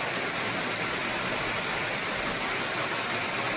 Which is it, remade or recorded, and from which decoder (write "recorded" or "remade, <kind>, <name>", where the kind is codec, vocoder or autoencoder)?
recorded